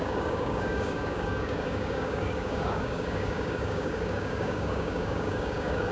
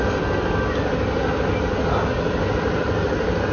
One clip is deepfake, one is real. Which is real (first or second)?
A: second